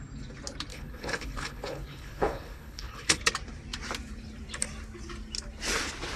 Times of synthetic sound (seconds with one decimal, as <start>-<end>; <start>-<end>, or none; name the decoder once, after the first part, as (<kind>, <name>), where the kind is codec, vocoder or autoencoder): 0.7-3.2 (codec, HILCodec)